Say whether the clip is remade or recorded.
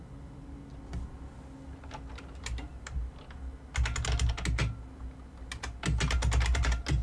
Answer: recorded